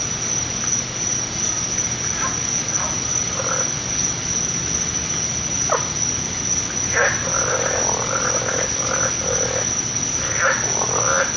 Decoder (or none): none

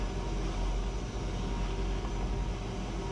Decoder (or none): none